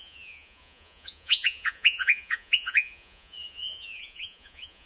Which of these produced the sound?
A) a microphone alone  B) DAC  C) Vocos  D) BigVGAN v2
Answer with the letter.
C